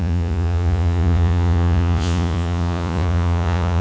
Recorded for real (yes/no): no